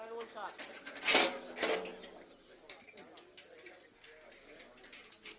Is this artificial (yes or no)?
no